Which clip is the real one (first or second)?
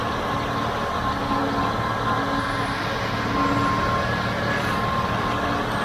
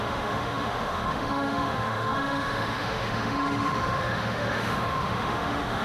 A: first